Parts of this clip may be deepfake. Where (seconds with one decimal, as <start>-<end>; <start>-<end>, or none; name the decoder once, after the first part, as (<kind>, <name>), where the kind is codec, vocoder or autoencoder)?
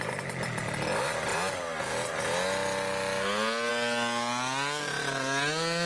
none